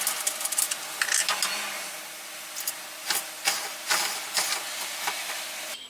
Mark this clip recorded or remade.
recorded